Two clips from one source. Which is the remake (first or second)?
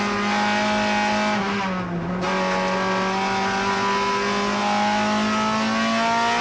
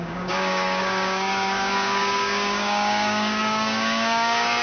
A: second